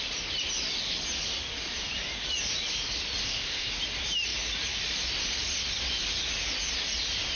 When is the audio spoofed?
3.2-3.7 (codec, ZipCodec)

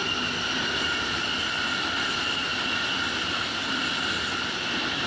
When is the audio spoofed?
none

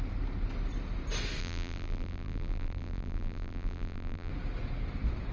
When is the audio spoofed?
1.4-4.3 (vocoder, BigVGAN v2)

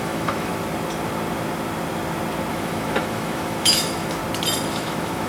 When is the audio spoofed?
0.0-0.5 (autoencoder, DAC-VAE); 2.5-4.2; 4.7-5.3

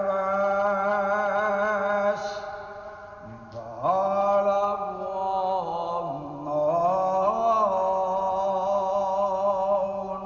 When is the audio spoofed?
none

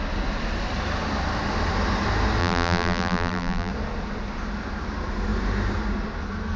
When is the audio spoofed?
2.4-3.7 (vocoder, BigVGAN v2)